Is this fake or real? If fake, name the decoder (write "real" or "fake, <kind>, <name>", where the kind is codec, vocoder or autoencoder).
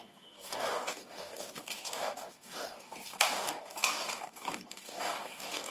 fake, codec, DAC